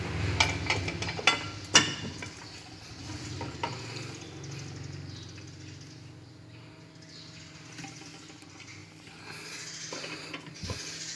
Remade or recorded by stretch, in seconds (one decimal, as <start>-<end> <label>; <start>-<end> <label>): 0.0-11.2 recorded

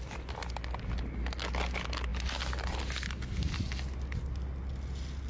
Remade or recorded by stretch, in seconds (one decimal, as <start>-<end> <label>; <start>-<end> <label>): 0.0-5.3 recorded

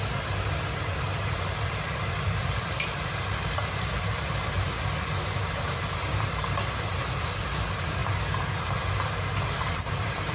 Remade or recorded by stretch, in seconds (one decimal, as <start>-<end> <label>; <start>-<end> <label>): 0.0-0.8 recorded; 0.8-8.0 remade; 8.0-9.6 recorded; 9.6-10.3 remade

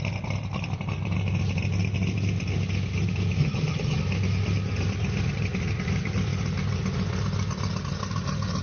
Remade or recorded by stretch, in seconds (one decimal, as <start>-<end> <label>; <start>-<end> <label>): 0.0-3.4 recorded; 3.4-4.0 remade; 4.0-8.6 recorded